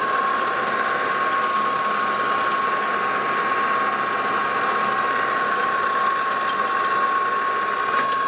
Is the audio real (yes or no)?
yes